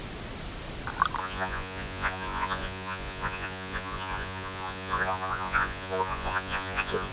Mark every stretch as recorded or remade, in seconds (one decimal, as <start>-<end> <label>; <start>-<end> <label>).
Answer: 0.0-1.2 recorded; 1.2-7.1 remade